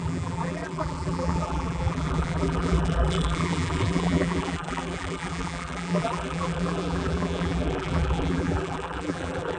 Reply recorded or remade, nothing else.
remade